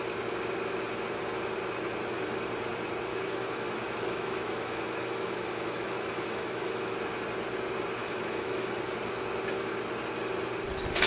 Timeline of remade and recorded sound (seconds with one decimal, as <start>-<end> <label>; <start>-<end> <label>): 0.0-3.1 recorded; 3.1-6.9 remade; 6.9-8.0 recorded; 8.0-8.8 remade; 8.8-11.1 recorded

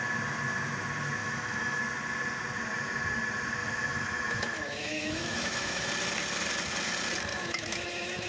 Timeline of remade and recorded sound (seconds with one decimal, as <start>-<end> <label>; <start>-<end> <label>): 0.0-1.2 recorded; 1.2-1.8 remade; 1.8-3.6 recorded; 3.6-5.9 remade; 5.9-7.3 recorded; 7.3-8.3 remade

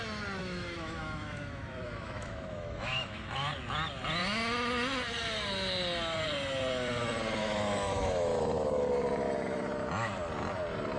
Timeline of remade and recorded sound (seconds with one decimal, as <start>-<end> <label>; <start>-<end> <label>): 0.0-0.4 recorded; 0.4-3.5 remade; 3.5-7.4 recorded; 7.4-8.4 remade; 8.4-11.0 recorded

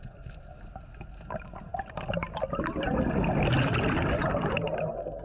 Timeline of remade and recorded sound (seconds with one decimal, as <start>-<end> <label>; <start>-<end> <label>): 0.0-5.2 recorded

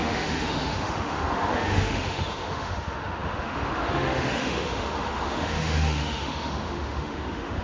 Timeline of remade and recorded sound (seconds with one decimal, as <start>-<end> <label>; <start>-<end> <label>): 0.0-7.6 remade

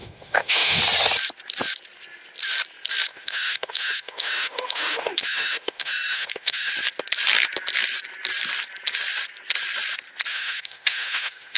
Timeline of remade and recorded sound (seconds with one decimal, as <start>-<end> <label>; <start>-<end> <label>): 0.0-0.8 remade; 0.8-3.1 recorded; 3.1-6.7 remade; 6.7-10.3 recorded; 10.3-11.6 remade

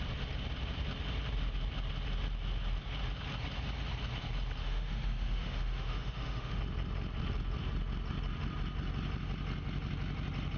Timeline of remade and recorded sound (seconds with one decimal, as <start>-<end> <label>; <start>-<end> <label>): 0.0-4.6 recorded; 4.6-6.6 remade; 6.6-10.6 recorded

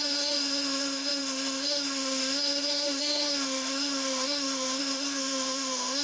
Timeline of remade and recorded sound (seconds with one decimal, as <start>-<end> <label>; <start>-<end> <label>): 0.0-6.0 remade